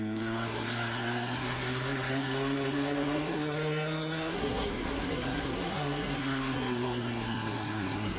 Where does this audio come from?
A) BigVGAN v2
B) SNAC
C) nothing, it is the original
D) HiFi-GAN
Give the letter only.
B